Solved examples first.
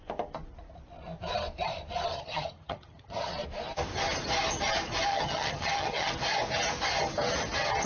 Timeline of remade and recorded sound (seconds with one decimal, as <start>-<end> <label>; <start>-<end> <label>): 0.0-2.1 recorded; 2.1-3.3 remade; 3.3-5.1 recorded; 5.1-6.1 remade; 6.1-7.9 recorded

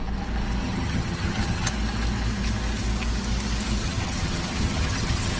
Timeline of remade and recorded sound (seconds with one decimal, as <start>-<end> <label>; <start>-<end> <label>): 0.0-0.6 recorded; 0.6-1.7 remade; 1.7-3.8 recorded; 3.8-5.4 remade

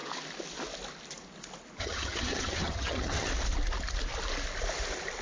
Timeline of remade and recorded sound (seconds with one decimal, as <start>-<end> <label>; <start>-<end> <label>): 0.0-1.8 recorded; 1.8-3.3 remade; 3.3-5.2 recorded

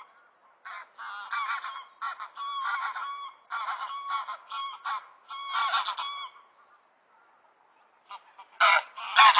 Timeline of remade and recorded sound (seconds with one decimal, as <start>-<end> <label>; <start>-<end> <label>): 0.0-9.4 recorded